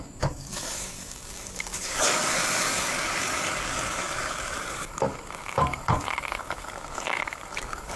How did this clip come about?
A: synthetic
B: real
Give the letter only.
A